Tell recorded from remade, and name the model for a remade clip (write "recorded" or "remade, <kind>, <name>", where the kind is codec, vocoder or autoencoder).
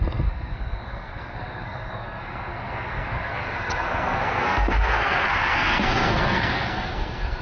remade, codec, SNAC